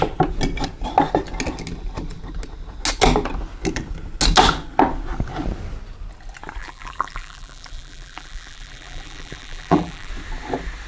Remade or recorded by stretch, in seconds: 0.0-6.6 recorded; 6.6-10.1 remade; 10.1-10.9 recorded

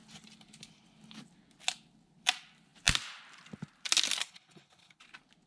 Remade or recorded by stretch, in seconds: 0.0-4.2 recorded; 4.2-5.0 remade; 5.0-5.5 recorded

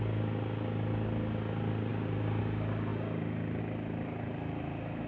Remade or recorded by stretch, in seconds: 0.0-5.1 recorded

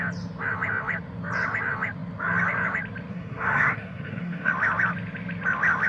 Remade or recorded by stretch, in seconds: 0.0-3.1 recorded; 3.1-4.5 remade; 4.5-5.9 recorded

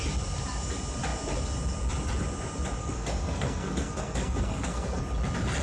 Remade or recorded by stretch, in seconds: 0.0-2.8 recorded; 2.8-5.0 remade; 5.0-5.6 recorded

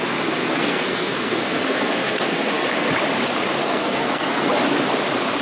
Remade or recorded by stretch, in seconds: 0.0-0.4 recorded; 0.4-2.9 remade; 2.9-3.6 recorded; 3.6-4.5 remade; 4.5-5.4 recorded

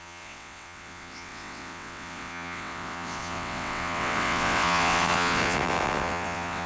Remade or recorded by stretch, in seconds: 0.0-6.7 remade

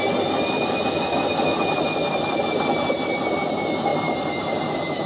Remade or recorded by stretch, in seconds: 0.0-3.9 recorded; 3.9-5.1 remade